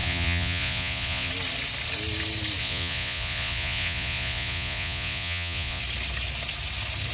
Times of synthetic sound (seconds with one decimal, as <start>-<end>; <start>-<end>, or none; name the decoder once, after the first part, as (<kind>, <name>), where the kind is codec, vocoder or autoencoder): 0.0-1.3 (vocoder, Vocos); 2.6-5.8